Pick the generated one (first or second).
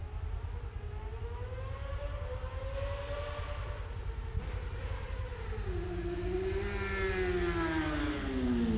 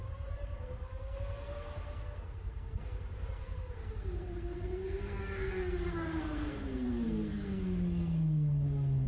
second